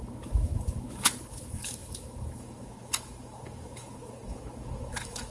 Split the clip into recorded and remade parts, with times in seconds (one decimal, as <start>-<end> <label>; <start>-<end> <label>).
0.0-5.3 remade